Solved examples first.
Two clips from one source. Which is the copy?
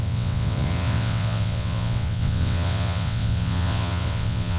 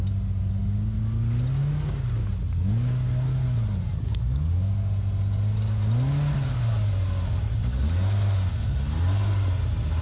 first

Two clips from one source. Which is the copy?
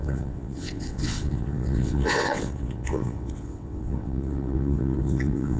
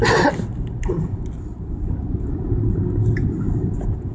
first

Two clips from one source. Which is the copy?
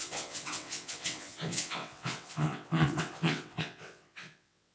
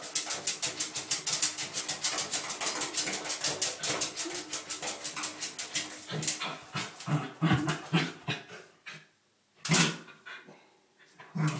first